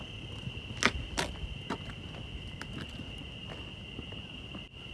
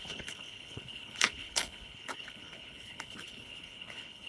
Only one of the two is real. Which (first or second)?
first